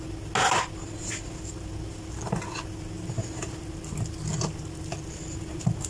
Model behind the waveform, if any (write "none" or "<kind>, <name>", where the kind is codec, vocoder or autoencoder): none